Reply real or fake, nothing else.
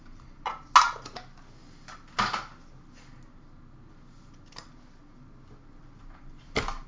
real